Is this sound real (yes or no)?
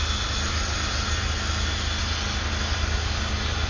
yes